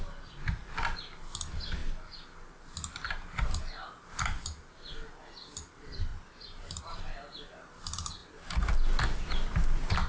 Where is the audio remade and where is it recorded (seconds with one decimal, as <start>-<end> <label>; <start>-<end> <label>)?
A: 0.0-6.1 recorded; 6.1-6.8 remade; 6.8-10.1 recorded